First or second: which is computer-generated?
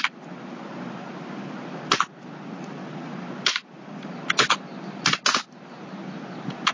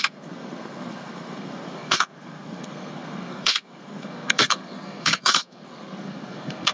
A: second